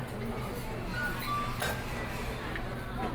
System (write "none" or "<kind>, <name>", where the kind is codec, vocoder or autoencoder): none